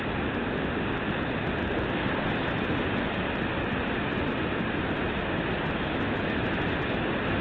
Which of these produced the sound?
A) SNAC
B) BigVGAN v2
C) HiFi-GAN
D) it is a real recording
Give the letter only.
D